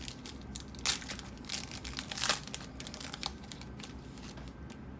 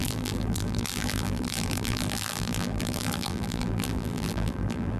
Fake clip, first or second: second